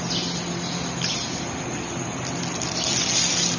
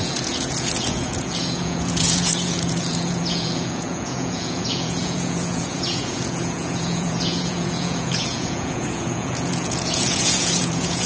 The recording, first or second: first